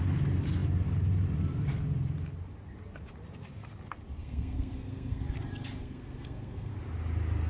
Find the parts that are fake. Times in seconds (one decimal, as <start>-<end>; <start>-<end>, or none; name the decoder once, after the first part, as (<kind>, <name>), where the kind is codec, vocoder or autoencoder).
4.2-5.3 (codec, SNAC); 5.8-6.7